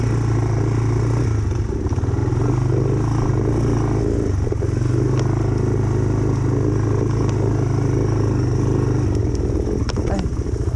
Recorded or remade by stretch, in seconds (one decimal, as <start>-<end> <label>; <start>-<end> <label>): 0.0-10.8 recorded